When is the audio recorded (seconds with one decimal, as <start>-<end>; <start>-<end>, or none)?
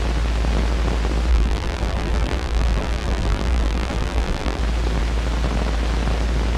0.0-1.3; 4.6-6.6